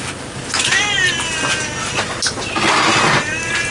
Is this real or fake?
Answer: real